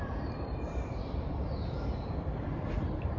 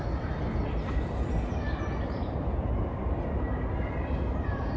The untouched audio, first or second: second